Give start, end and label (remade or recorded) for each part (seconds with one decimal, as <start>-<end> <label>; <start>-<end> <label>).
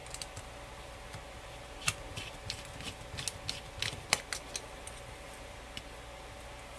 0.0-6.8 recorded